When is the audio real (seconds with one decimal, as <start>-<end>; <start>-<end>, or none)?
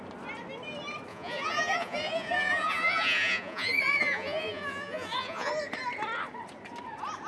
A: 0.0-1.1; 5.5-7.3